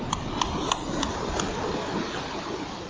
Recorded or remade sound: recorded